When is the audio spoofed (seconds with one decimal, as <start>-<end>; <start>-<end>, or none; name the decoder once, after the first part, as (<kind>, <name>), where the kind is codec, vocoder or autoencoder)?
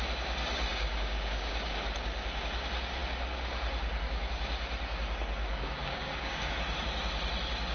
0.7-1.6 (codec, DAC); 5.4-6.5